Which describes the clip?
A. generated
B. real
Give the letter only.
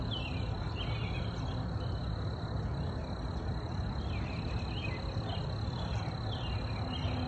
B